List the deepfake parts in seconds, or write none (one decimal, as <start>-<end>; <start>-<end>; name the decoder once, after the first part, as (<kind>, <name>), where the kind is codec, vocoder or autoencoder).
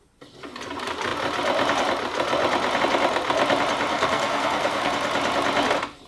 3.9-4.9 (codec, SNAC)